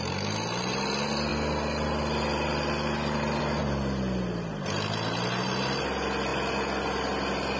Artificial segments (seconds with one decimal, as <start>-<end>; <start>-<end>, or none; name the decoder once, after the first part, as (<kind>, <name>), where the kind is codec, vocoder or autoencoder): none